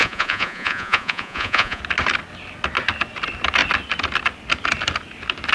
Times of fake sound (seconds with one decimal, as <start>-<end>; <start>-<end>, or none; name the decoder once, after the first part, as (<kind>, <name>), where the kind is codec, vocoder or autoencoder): 0.0-1.8 (vocoder, Vocos)